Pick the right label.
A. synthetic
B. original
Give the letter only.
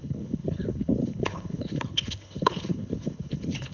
A